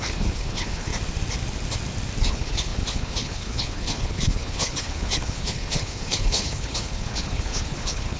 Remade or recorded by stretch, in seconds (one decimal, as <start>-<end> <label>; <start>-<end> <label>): 0.0-0.9 remade; 0.9-2.2 recorded; 2.2-8.2 remade